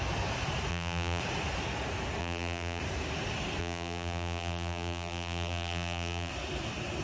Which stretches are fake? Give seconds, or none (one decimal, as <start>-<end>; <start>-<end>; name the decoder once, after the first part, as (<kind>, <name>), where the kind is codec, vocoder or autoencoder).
0.7-1.2 (vocoder, BigVGAN v2); 2.2-2.8; 3.6-6.3